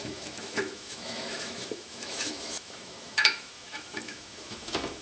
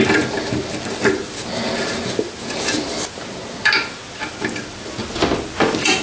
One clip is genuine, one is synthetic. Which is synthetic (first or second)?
first